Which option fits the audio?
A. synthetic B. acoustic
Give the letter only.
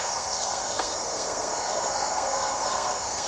A